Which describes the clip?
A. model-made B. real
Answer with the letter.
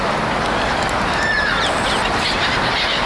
B